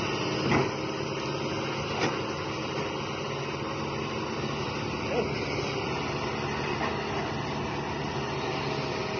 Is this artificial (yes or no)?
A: no